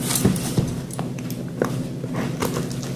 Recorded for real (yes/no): yes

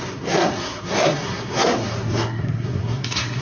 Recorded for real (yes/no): no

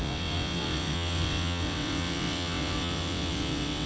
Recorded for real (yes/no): no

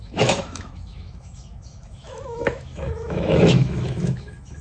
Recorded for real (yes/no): no